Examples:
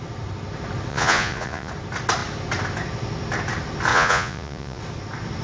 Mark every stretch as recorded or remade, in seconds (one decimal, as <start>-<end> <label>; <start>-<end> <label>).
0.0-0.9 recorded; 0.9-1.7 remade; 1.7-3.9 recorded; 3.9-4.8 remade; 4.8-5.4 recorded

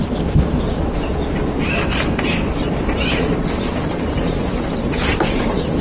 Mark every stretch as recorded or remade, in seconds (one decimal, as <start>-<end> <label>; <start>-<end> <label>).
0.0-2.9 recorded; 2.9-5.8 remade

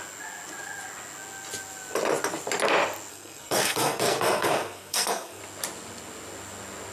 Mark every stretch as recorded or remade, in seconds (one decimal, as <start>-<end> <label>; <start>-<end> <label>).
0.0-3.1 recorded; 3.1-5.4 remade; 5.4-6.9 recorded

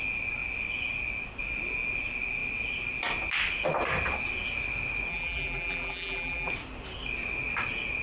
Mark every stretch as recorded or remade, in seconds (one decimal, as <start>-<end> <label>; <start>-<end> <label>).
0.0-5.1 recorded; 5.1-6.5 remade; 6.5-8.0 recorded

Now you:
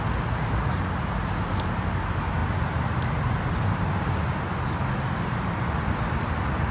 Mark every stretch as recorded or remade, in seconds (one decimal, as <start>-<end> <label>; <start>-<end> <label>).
0.0-6.7 recorded